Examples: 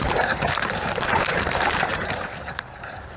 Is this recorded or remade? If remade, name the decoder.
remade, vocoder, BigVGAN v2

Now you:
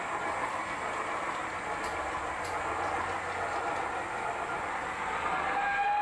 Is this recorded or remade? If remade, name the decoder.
recorded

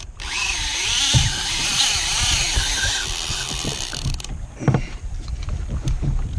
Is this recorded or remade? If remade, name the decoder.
remade, vocoder, BigVGAN v2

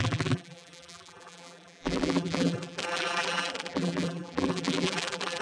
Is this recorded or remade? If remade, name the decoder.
remade, vocoder, BigVGAN v2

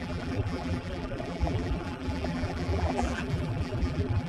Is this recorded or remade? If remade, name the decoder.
remade, vocoder, BigVGAN v2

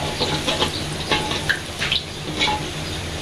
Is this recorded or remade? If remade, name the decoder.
recorded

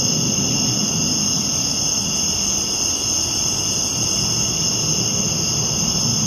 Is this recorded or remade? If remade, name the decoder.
recorded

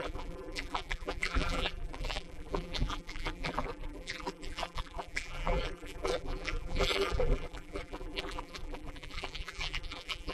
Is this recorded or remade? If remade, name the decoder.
remade, vocoder, BigVGAN v2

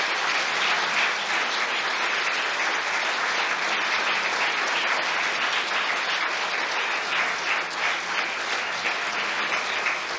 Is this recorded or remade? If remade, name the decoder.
recorded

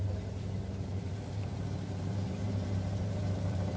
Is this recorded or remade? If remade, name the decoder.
remade, vocoder, BigVGAN v2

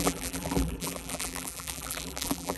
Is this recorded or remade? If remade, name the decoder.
remade, vocoder, BigVGAN v2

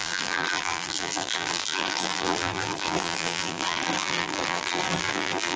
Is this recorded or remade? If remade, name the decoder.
remade, vocoder, BigVGAN v2